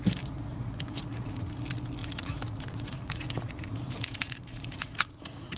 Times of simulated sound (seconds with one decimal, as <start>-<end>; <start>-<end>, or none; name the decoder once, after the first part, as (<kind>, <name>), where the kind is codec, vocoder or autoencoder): 0.5-1.5 (vocoder, Vocos); 2.0-5.6